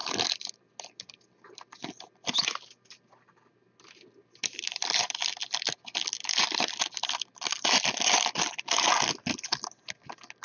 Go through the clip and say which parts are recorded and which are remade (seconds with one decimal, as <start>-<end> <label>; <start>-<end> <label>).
0.0-10.4 recorded